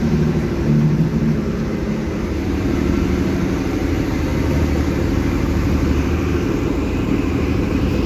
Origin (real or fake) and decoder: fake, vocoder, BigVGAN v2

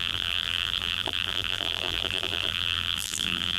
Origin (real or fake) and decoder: fake, vocoder, BigVGAN v2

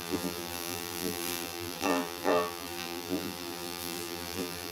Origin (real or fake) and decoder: fake, vocoder, BigVGAN v2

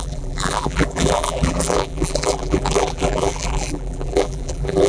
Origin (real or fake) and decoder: fake, vocoder, BigVGAN v2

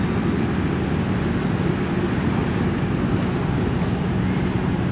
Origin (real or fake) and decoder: real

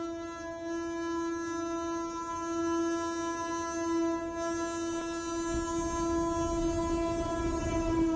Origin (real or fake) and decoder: real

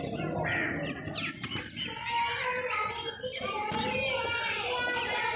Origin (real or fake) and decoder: real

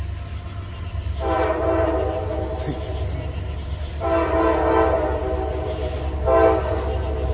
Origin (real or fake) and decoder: real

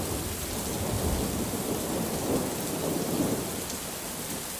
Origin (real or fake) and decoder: real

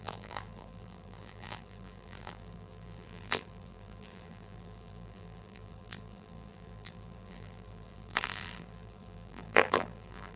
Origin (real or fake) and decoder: fake, vocoder, BigVGAN v2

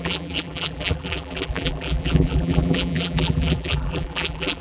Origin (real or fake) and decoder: fake, vocoder, BigVGAN v2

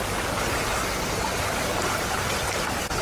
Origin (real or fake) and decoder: real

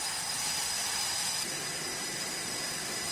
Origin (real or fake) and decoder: real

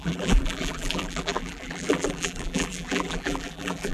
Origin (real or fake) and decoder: fake, vocoder, BigVGAN v2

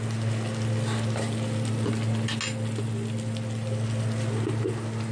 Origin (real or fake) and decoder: real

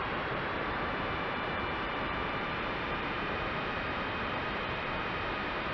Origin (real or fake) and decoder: fake, vocoder, BigVGAN v2